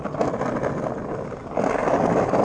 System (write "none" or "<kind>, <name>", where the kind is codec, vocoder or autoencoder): none